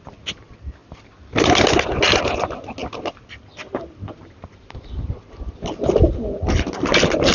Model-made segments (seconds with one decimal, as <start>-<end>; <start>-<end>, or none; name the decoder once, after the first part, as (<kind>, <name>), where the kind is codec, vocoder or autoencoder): none